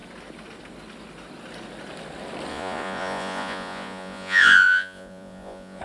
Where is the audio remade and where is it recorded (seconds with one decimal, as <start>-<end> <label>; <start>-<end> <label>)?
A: 0.0-2.5 recorded; 2.5-5.8 remade